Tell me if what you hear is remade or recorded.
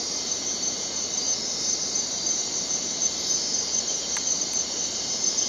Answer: remade